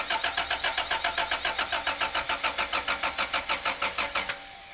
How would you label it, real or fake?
real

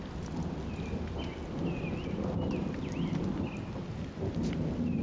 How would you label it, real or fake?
real